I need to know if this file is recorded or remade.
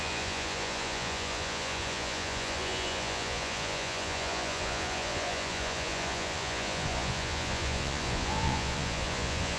remade